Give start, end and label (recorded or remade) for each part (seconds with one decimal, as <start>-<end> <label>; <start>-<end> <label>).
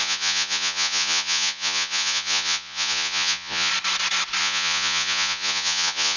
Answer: 0.0-3.7 remade; 3.7-4.4 recorded; 4.4-6.2 remade